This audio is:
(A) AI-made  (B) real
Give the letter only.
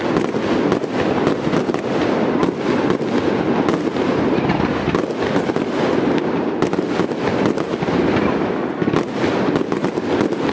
B